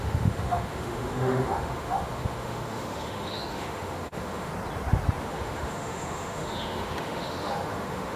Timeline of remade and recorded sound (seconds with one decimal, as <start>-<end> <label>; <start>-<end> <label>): 0.0-4.5 remade; 4.5-5.2 recorded; 5.2-8.2 remade

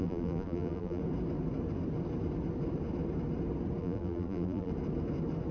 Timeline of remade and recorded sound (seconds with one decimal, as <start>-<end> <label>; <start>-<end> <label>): 0.0-1.0 remade; 1.0-3.8 recorded; 3.8-4.7 remade; 4.7-5.5 recorded

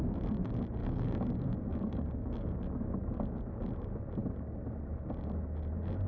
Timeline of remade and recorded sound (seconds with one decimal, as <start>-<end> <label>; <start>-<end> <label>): 0.0-0.8 recorded; 0.8-3.4 remade; 3.4-6.1 recorded

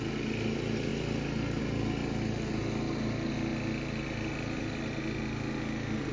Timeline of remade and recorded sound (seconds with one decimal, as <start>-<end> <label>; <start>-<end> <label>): 0.0-6.1 recorded

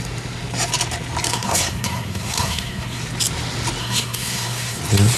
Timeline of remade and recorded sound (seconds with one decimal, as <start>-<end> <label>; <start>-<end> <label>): 0.0-1.3 recorded; 1.3-3.0 remade; 3.0-3.8 recorded; 3.8-4.8 remade; 4.8-5.2 recorded

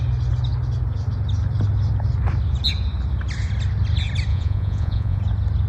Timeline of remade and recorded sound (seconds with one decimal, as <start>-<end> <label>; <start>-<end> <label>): 0.0-4.3 recorded; 4.3-5.2 remade; 5.2-5.7 recorded

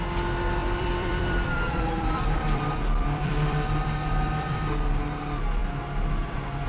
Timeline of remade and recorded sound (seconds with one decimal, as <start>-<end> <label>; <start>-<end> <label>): 0.0-0.6 recorded; 0.6-4.6 remade; 4.6-6.7 recorded